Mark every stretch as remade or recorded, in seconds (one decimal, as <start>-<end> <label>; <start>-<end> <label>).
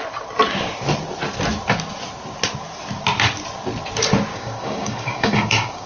0.0-4.3 recorded; 4.3-5.9 remade